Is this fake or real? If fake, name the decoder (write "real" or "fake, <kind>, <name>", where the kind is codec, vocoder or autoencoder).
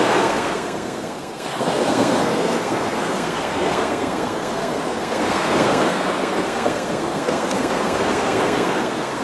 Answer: fake, codec, SNAC